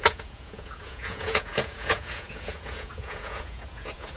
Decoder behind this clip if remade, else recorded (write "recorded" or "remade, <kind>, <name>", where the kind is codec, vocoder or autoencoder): remade, vocoder, Vocos